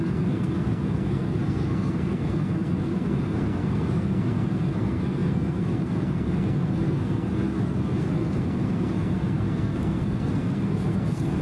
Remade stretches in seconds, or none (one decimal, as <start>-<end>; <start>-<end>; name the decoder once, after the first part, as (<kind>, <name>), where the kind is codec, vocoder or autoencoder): 0.0-11.4 (codec, SNAC)